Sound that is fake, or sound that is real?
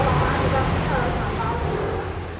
real